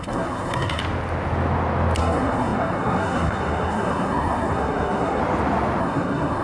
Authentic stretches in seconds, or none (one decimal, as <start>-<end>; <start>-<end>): 0.8-2.0; 5.2-5.8